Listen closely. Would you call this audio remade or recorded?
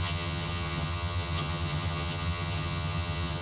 remade